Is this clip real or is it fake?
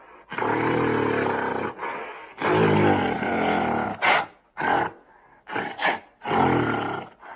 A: real